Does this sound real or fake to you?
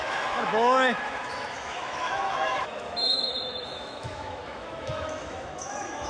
fake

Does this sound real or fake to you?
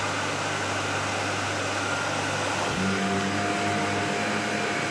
real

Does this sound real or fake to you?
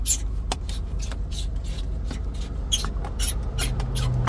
real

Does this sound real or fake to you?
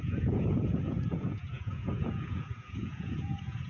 fake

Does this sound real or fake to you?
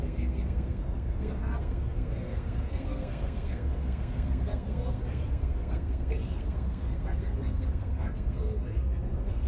fake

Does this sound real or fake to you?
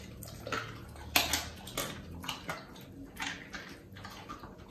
real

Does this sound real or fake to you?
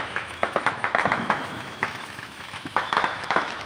fake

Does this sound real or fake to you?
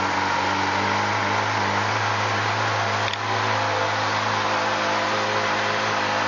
real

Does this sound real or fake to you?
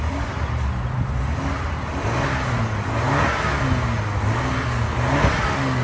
real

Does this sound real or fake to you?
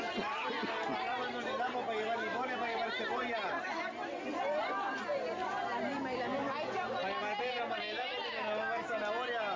real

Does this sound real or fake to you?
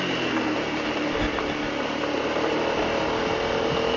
real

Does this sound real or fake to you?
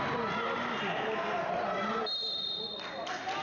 real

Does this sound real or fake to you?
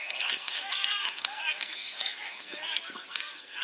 fake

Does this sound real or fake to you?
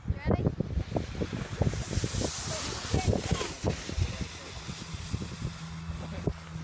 real